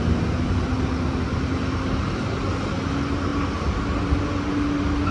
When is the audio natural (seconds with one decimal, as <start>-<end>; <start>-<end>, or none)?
0.0-5.1